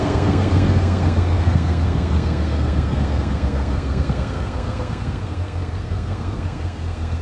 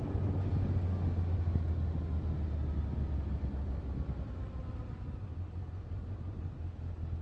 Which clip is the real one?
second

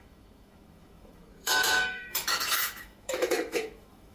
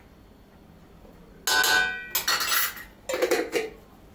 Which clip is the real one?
second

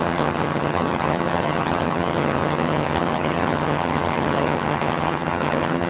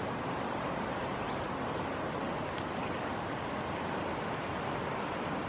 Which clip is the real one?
second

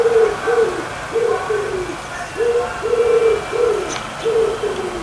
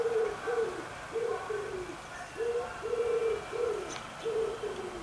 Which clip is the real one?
first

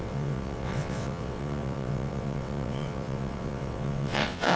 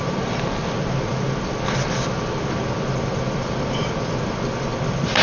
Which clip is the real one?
second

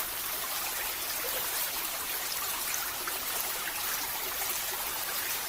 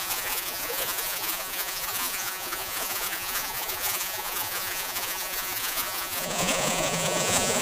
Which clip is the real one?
first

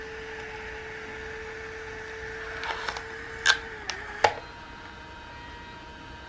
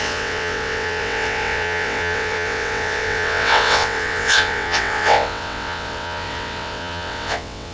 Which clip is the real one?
first